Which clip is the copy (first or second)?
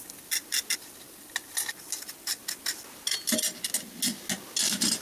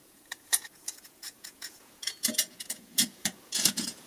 second